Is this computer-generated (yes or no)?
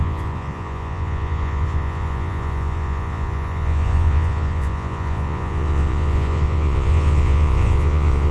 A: yes